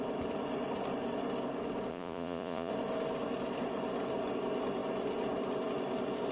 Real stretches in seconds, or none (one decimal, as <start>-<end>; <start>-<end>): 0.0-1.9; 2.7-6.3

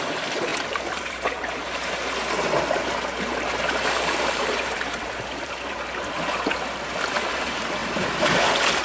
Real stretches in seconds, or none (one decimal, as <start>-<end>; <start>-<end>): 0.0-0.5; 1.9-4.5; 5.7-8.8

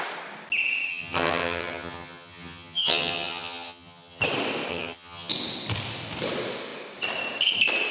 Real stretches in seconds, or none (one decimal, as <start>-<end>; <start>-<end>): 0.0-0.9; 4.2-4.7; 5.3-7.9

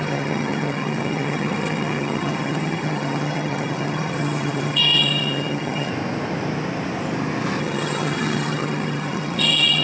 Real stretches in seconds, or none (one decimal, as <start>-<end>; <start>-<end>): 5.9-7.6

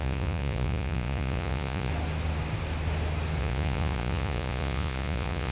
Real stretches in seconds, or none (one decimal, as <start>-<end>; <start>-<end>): 1.9-3.4

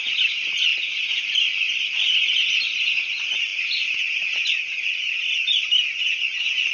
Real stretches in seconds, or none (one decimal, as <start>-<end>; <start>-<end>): 0.0-0.7; 2.0-6.7